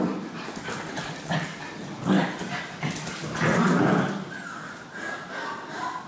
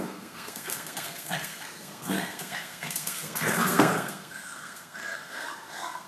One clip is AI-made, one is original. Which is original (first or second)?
first